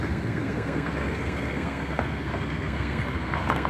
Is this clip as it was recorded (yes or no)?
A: no